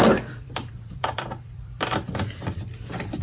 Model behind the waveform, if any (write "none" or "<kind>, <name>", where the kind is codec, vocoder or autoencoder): vocoder, BigVGAN v2